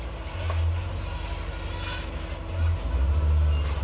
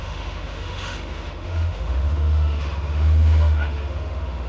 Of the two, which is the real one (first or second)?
first